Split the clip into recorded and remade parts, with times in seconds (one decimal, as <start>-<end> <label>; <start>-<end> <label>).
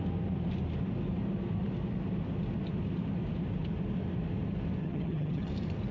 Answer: 0.0-4.8 recorded; 4.8-5.5 remade; 5.5-5.9 recorded